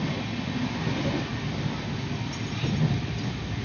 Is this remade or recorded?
recorded